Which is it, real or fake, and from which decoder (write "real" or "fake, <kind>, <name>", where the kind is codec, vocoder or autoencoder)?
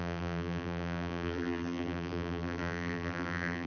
fake, vocoder, BigVGAN v2